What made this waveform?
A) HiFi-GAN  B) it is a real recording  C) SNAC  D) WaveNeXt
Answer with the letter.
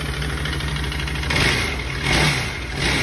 B